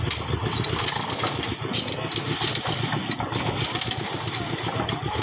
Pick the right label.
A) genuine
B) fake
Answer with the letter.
A